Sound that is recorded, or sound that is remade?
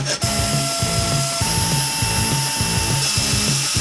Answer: recorded